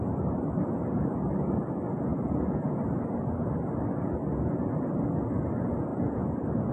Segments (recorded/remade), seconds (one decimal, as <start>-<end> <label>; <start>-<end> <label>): 0.0-2.1 recorded; 2.1-2.8 remade; 2.8-6.7 recorded